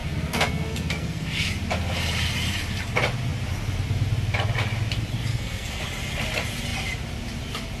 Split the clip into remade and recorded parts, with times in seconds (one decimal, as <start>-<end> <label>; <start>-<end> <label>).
0.0-1.5 remade; 1.5-5.3 recorded; 5.3-5.8 remade; 5.8-7.8 recorded